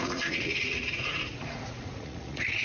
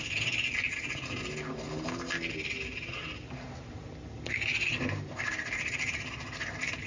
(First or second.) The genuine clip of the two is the second